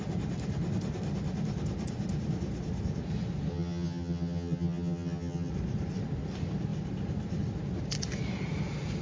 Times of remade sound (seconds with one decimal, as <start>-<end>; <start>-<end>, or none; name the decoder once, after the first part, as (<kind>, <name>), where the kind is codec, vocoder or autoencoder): 3.5-5.5 (vocoder, HiFi-GAN)